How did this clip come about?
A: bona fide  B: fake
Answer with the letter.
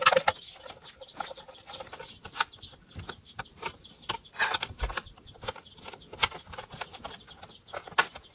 A